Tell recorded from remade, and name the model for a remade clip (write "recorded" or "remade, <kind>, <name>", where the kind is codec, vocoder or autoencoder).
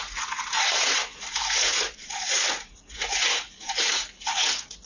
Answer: remade, vocoder, Vocos